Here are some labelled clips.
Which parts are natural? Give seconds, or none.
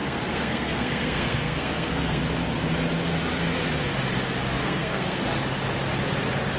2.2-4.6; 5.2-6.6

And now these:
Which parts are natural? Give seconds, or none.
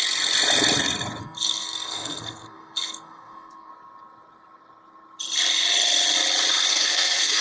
0.0-1.2; 3.7-6.7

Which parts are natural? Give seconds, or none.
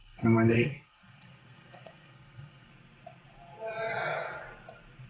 2.7-5.1